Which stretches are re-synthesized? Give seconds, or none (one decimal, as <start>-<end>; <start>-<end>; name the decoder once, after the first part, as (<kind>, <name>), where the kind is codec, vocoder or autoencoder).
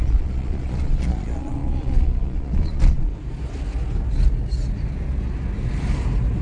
0.0-3.1 (vocoder, Vocos)